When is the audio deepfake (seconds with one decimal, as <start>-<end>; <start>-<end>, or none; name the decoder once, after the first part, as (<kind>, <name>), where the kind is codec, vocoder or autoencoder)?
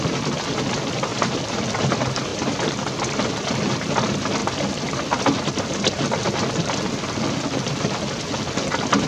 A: 1.1-1.9 (vocoder, BigVGAN v2); 2.3-4.0